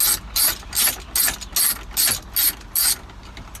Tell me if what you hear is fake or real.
real